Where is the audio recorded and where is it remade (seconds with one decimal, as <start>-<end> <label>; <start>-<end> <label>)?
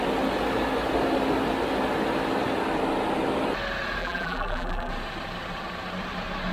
0.0-4.0 recorded; 4.0-4.9 remade; 4.9-6.5 recorded